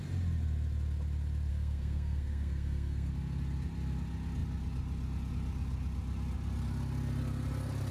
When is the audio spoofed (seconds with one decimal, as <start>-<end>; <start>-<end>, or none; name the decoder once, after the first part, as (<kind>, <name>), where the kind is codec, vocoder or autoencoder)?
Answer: 1.5-3.1 (codec, SNAC)

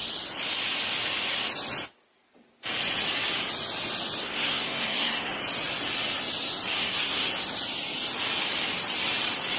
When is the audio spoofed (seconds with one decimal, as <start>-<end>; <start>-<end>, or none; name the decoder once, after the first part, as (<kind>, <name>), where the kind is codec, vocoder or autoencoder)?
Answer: 4.2-5.4 (codec, SNAC); 6.7-7.3

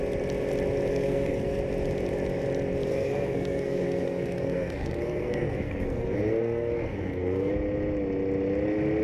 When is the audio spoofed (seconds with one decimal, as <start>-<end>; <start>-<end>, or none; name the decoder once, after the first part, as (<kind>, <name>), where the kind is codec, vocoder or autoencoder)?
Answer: 0.9-1.6 (codec, SNAC); 2.9-7.5

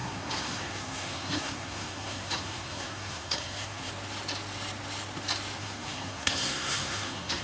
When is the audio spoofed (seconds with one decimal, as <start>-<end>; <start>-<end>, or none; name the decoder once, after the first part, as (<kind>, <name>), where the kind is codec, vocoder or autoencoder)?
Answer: 0.0-3.9 (codec, SNAC); 5.6-7.4

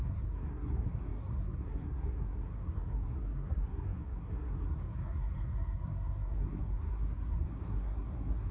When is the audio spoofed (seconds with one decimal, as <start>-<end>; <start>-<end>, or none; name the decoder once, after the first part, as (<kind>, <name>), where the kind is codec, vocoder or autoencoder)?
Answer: 0.0-8.5 (codec, SNAC)

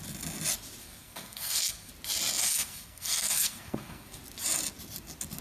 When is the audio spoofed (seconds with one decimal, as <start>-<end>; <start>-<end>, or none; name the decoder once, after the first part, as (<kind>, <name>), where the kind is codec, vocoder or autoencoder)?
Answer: 0.8-1.9 (codec, SNAC); 2.4-4.2

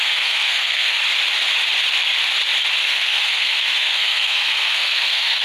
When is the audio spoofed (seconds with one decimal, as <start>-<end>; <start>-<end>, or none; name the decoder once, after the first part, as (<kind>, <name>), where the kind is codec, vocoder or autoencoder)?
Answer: 0.0-1.0 (codec, SNAC); 2.8-5.4

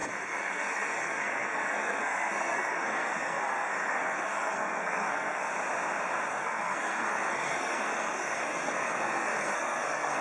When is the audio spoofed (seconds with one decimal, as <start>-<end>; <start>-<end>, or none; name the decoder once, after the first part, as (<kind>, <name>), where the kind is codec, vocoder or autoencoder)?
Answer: 0.0-5.5 (codec, SNAC); 6.3-10.2